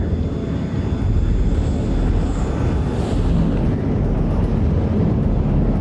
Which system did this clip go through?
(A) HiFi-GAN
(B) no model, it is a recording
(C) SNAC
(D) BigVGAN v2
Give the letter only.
B